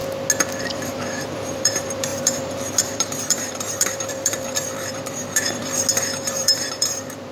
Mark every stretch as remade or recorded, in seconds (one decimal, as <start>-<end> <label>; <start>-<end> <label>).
0.0-0.6 recorded; 0.6-5.6 remade; 5.6-6.3 recorded; 6.3-7.3 remade